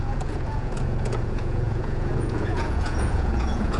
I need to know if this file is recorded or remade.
remade